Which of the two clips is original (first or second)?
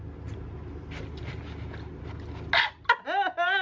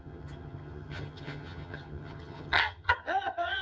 first